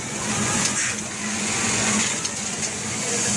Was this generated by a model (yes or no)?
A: yes